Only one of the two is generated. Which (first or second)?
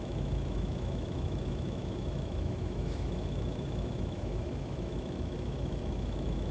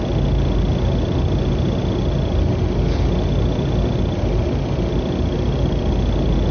first